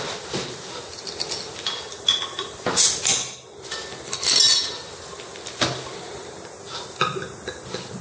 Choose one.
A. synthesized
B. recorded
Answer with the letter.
B